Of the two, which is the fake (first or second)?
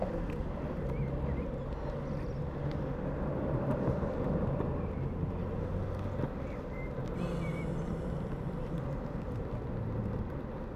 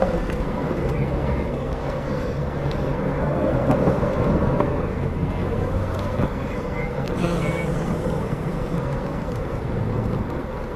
second